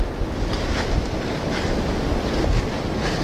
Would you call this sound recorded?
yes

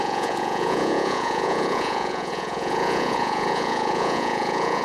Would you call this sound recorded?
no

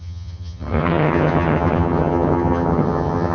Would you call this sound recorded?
no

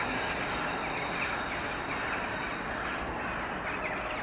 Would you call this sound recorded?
yes